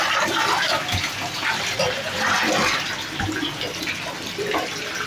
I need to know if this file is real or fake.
real